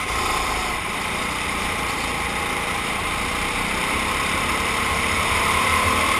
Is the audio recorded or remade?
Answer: remade